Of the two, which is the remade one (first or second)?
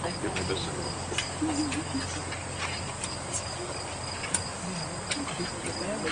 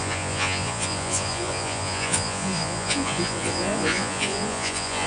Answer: second